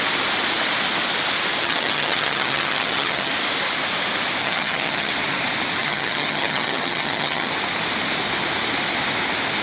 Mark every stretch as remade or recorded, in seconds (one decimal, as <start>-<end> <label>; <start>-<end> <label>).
0.0-1.6 recorded; 1.6-3.3 remade; 3.3-4.4 recorded; 4.4-5.1 remade; 5.1-5.8 recorded; 5.8-7.5 remade; 7.5-9.6 recorded